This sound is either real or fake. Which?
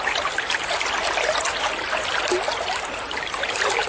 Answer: real